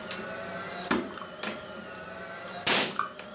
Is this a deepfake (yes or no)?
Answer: no